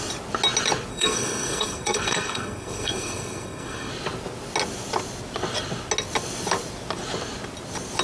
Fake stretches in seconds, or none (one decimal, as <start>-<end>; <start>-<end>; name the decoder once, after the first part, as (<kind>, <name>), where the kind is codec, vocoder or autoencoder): 0.9-3.9 (codec, SNAC)